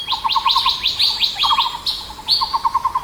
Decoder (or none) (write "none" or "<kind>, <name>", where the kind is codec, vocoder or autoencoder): none